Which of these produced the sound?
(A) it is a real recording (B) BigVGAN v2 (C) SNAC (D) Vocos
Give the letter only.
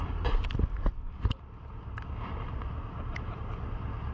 A